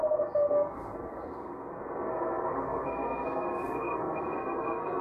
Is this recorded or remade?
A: remade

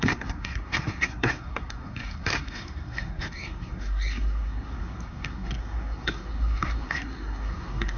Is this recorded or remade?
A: remade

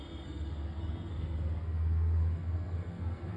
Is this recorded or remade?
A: remade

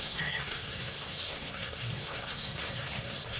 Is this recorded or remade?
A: remade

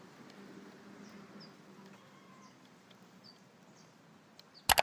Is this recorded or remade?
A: recorded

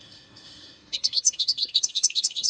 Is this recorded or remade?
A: remade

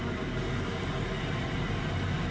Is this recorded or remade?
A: recorded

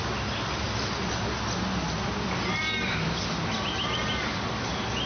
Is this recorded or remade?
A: recorded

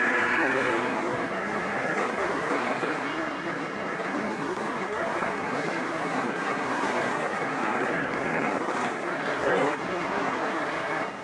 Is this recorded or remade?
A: remade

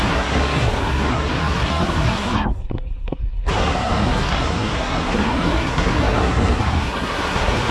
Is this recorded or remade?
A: remade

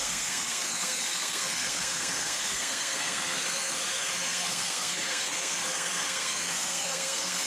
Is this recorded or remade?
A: remade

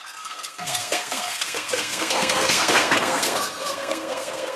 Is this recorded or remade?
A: remade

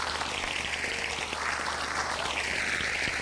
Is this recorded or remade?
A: recorded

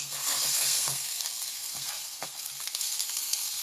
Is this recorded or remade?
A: remade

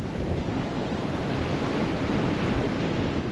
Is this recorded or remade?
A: recorded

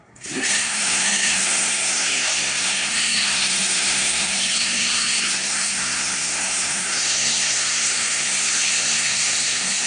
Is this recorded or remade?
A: remade